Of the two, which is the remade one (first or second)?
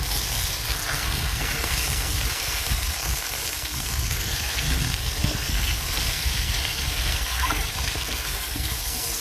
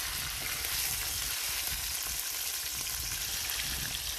first